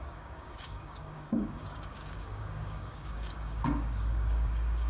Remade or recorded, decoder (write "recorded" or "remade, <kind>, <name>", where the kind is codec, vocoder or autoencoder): remade, codec, DAC